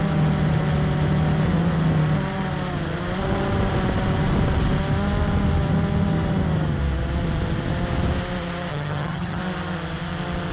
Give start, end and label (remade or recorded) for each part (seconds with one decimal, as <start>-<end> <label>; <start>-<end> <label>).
0.0-8.7 recorded; 8.7-9.4 remade; 9.4-10.5 recorded